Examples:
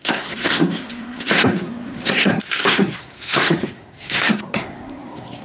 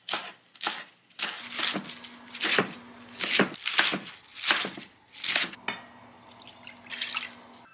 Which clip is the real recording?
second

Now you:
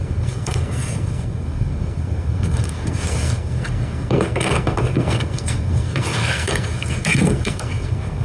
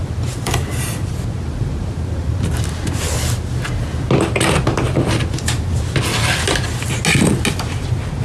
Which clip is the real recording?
second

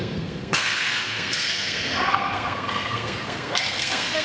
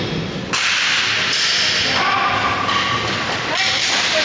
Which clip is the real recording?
second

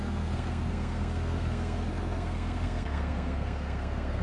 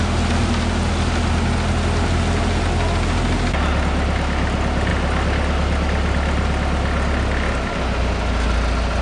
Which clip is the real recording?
second